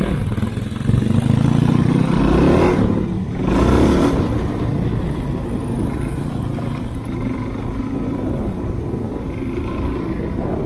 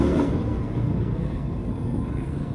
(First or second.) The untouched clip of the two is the first